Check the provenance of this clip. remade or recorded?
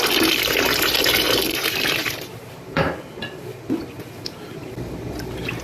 remade